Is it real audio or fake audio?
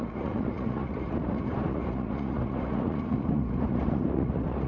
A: fake